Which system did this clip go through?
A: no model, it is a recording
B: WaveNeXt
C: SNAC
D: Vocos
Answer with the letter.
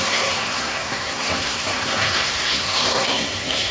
C